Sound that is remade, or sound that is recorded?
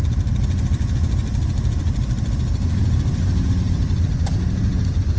recorded